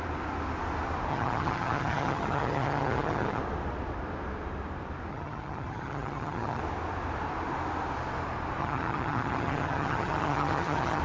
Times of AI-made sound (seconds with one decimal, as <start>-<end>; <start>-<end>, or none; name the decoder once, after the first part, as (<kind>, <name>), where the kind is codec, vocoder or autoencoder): 1.1-3.4 (vocoder, HiFi-GAN); 5.1-6.6; 8.6-11.0